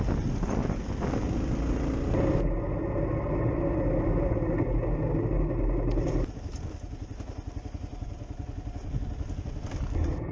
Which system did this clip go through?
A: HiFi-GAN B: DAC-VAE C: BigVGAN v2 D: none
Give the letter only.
D